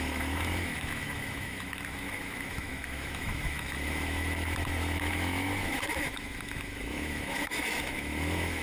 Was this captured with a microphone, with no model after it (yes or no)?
no